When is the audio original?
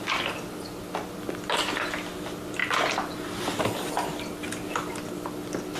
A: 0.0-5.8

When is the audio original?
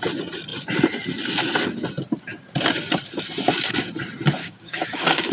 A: 0.0-4.4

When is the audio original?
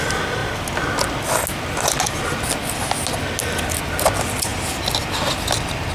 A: 0.0-5.9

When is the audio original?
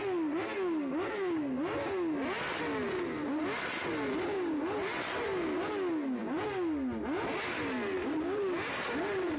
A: 0.0-9.4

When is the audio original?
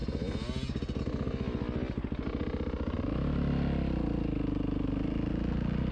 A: 0.0-5.9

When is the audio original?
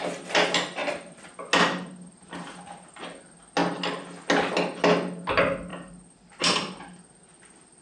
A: 0.0-5.7; 7.2-7.8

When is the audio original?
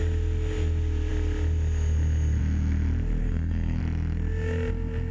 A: 0.0-3.2; 3.8-5.1